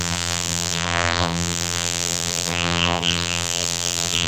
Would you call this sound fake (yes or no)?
yes